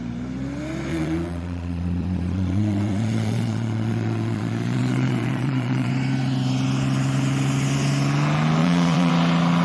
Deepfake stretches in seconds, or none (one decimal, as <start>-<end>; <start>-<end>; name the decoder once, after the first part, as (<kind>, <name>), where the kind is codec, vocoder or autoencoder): 0.9-5.9 (vocoder, Vocos); 8.6-9.1